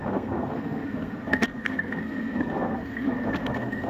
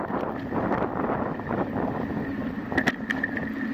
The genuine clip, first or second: second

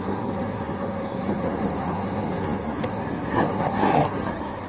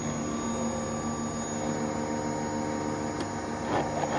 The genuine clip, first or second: second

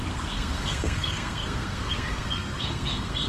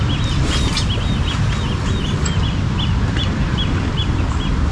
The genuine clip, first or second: second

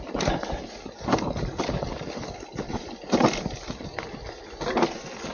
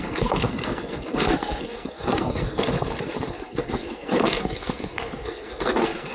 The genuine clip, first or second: first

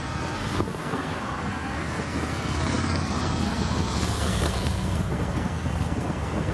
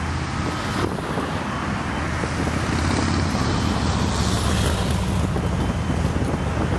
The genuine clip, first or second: second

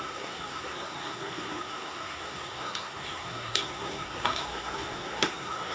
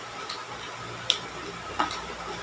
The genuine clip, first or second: second